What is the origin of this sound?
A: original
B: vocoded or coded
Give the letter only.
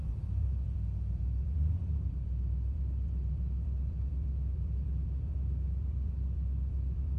B